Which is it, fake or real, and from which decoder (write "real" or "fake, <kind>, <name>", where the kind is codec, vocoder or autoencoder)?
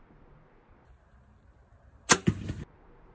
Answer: real